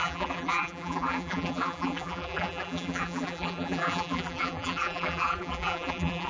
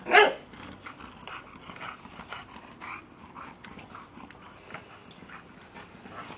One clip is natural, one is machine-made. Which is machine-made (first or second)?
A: first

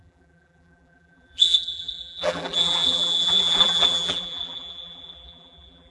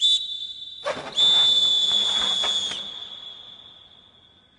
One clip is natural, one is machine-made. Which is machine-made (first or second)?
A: first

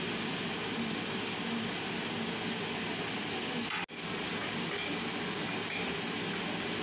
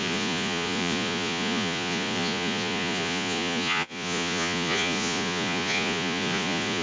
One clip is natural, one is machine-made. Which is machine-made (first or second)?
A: second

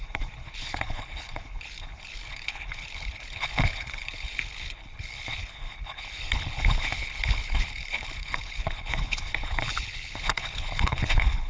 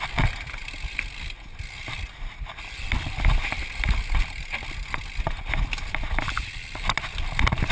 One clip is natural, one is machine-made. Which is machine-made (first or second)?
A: first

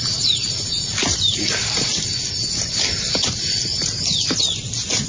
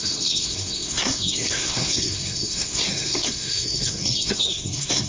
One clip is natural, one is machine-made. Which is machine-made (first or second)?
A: second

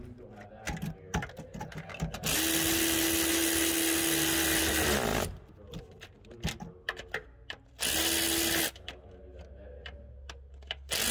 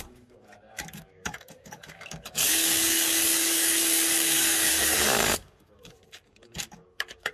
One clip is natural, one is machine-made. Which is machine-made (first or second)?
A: second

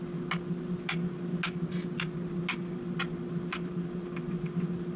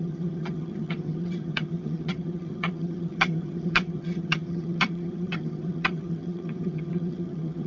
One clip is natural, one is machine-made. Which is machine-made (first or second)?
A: second